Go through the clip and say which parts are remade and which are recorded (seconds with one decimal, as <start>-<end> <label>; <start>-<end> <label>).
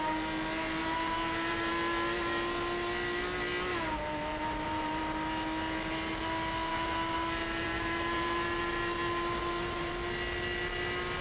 0.0-0.8 recorded; 0.8-1.7 remade; 1.7-3.7 recorded; 3.7-5.0 remade; 5.0-6.7 recorded; 6.7-9.9 remade; 9.9-11.2 recorded